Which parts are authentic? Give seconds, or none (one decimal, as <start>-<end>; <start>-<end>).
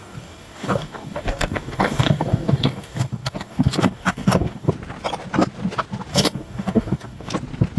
4.7-6.1; 7.3-7.8